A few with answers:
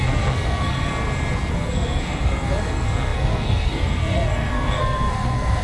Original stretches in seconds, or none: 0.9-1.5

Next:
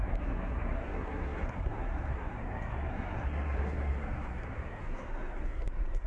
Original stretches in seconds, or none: none

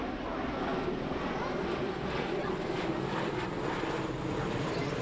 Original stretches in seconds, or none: 0.0-5.0

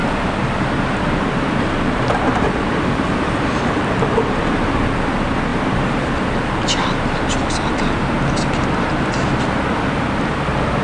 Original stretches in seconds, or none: 4.8-5.5; 8.1-10.8

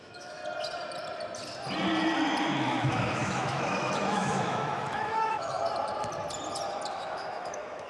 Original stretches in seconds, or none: 0.4-2.6; 5.6-6.9

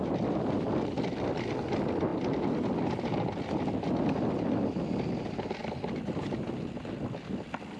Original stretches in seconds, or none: 0.0-7.8

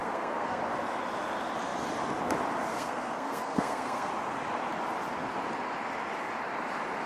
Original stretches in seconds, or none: 0.6-2.7; 4.1-7.1